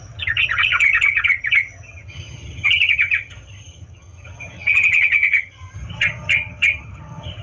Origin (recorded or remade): remade